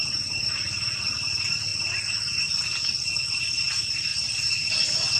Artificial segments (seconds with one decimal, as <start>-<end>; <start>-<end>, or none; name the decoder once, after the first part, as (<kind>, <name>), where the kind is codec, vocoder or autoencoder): 0.0-1.7 (vocoder, BigVGAN v2); 3.4-5.2